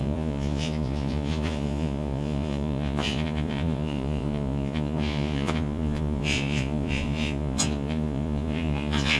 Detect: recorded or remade remade